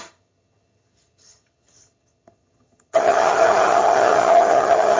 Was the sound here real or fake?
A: fake